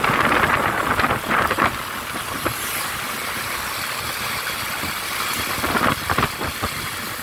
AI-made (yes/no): no